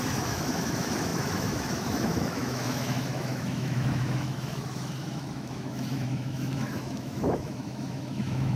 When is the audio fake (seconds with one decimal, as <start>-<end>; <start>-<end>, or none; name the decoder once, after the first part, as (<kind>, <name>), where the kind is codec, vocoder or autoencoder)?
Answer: 0.0-8.6 (autoencoder, DAC-VAE)